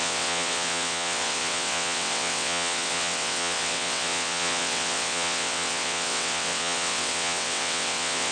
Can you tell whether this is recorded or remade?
remade